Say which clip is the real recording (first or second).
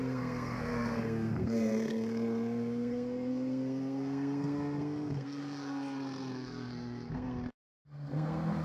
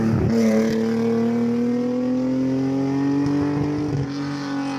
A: second